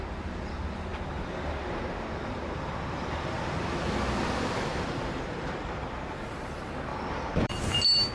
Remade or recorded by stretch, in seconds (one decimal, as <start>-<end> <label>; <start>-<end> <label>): 0.0-0.9 recorded; 0.9-3.7 remade; 3.7-4.7 recorded; 4.7-6.3 remade; 6.3-6.9 recorded; 6.9-7.6 remade; 7.6-8.1 recorded